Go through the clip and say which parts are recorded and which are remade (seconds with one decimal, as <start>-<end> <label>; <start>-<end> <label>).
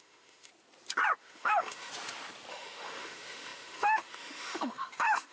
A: 0.0-0.5 remade; 0.5-1.2 recorded; 1.2-1.9 remade; 1.9-2.5 recorded; 2.5-5.3 remade